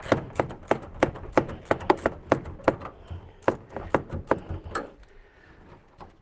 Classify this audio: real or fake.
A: real